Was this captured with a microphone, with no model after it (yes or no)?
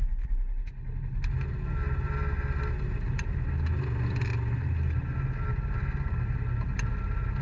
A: yes